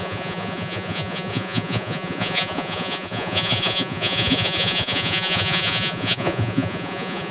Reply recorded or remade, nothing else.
remade